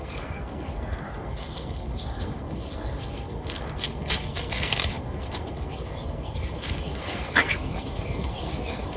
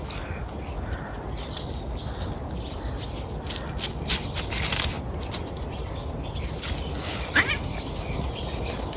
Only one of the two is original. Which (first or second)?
second